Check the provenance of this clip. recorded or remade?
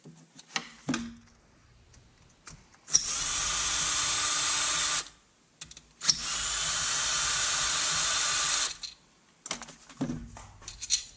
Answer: recorded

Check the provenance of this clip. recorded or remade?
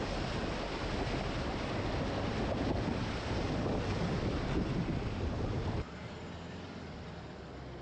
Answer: recorded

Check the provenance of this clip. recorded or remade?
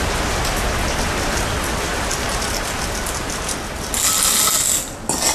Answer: recorded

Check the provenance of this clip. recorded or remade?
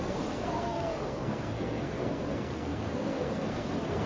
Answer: remade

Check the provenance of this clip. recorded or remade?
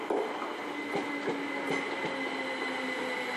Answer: recorded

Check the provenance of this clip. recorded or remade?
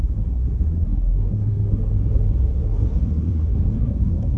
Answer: remade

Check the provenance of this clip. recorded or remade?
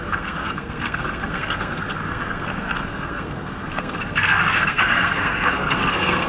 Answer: remade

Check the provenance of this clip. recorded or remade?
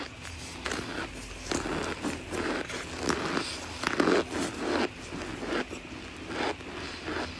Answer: recorded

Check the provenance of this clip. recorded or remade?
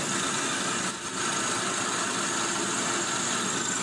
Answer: recorded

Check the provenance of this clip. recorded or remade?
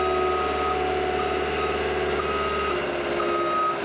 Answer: recorded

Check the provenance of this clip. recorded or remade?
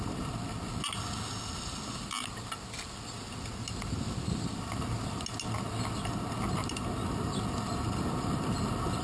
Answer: recorded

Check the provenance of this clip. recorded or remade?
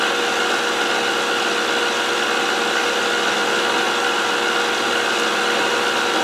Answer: recorded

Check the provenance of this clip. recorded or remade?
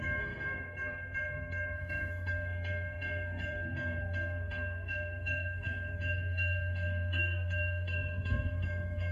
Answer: remade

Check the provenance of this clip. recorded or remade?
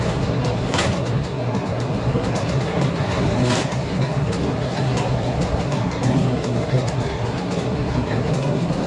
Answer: remade